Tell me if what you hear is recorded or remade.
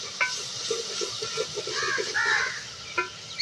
recorded